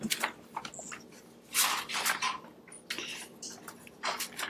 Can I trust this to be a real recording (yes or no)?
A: yes